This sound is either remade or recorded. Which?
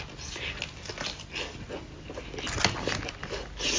recorded